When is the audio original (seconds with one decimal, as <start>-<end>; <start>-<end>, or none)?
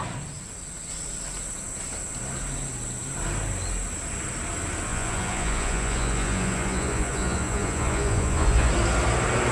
0.0-4.9; 8.7-9.5